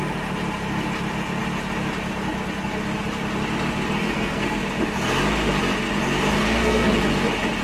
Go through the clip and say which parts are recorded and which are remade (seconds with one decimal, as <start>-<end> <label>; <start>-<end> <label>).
0.0-4.0 recorded; 4.0-4.6 remade; 4.6-6.4 recorded; 6.4-6.9 remade; 6.9-7.6 recorded